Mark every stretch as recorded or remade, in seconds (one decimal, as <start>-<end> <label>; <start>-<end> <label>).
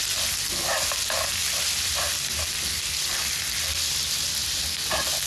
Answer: 0.0-5.3 recorded